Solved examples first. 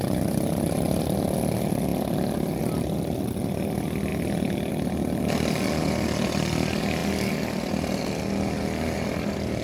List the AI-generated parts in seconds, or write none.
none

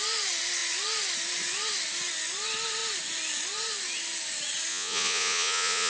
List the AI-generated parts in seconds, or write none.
4.7-5.9 (vocoder, Vocos)

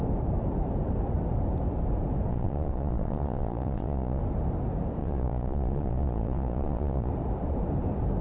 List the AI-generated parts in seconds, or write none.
2.3-4.2 (vocoder, Vocos); 5.0-7.1

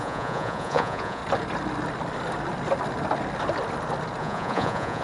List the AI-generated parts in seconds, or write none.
0.0-1.2 (vocoder, Vocos); 4.2-5.0

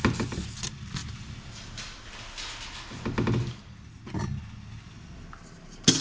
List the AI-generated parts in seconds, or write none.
none

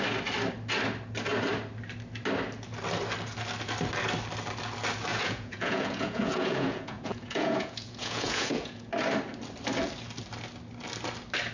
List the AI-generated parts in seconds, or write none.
5.1-8.9 (vocoder, Vocos)